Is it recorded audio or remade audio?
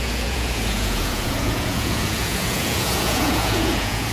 remade